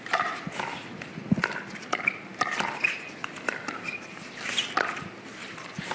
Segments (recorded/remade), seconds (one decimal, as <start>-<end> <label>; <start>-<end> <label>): 0.0-5.9 recorded